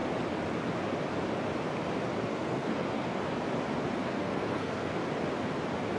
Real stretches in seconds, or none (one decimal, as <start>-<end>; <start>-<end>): 0.0-2.3; 3.2-4.0; 5.0-6.0